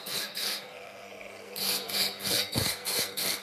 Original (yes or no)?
no